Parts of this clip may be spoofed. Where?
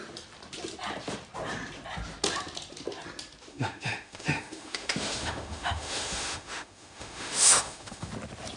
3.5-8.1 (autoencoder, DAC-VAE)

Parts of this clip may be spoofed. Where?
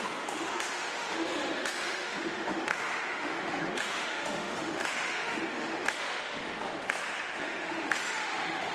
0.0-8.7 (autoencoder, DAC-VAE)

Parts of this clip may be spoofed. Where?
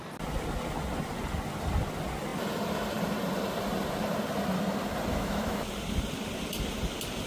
5.1-5.6 (autoencoder, DAC-VAE)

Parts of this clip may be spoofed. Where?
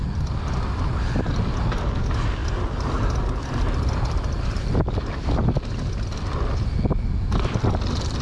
none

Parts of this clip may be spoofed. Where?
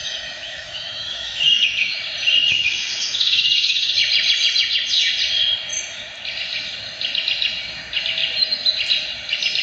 0.0-2.0 (autoencoder, DAC-VAE); 2.5-3.9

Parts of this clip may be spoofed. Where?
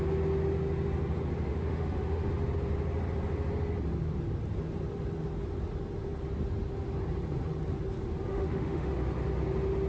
1.5-2.3 (autoencoder, DAC-VAE); 8.3-8.9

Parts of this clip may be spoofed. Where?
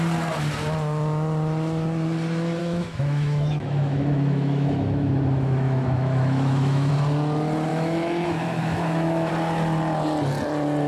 2.6-6.9 (autoencoder, DAC-VAE); 7.7-9.3